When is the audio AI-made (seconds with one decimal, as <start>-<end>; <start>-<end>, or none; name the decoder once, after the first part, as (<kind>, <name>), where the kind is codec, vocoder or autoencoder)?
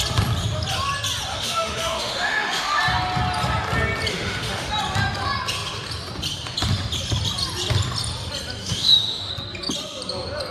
1.3-2.8 (autoencoder, DAC-VAE); 4.1-4.7; 8.6-9.3